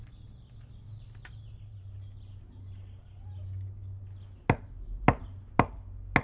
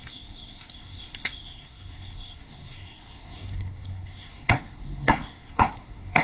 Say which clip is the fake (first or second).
second